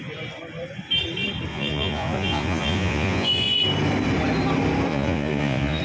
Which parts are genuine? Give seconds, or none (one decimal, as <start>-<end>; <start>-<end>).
0.0-1.5; 3.6-4.9